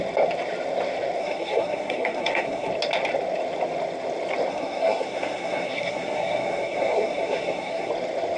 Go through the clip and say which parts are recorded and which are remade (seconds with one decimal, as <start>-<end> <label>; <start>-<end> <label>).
0.0-1.2 recorded; 1.2-2.7 remade; 2.7-4.5 recorded; 4.5-7.9 remade; 7.9-8.4 recorded